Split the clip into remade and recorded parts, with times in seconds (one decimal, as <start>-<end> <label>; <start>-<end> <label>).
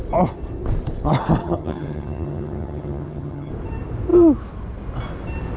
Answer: 0.0-1.4 recorded; 1.4-3.5 remade; 3.5-5.6 recorded